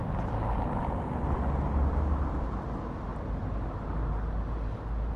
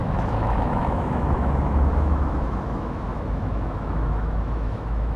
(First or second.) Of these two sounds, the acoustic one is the first